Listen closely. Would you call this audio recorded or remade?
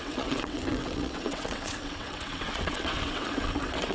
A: remade